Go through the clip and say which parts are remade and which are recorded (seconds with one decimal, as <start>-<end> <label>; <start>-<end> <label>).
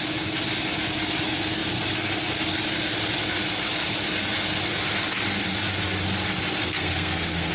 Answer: 0.0-6.6 recorded; 6.6-7.5 remade